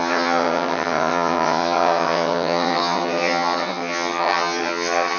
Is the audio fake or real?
fake